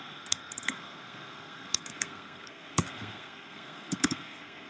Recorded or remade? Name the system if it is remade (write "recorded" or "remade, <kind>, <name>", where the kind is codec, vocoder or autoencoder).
remade, codec, SNAC